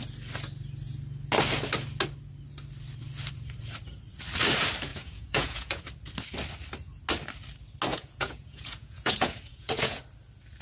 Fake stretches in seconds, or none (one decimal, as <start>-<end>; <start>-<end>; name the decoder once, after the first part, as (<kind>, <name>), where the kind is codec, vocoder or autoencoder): 4.9-5.8 (vocoder, Vocos); 7.9-10.0